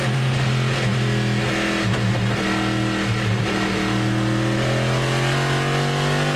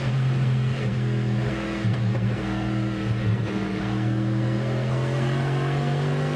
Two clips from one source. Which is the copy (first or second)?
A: second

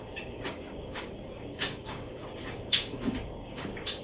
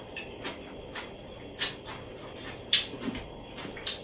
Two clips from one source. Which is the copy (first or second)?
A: first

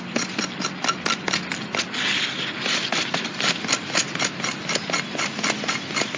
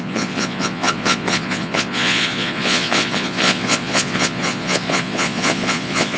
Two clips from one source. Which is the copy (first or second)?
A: second